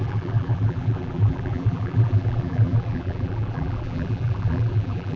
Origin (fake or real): fake